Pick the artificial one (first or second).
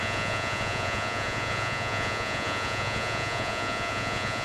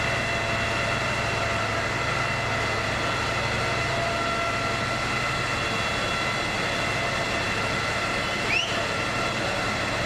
first